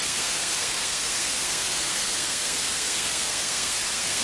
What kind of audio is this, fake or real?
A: fake